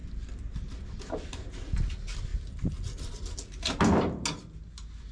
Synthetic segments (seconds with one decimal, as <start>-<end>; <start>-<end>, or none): none